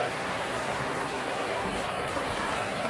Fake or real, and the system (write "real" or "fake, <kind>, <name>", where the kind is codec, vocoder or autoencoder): fake, codec, SNAC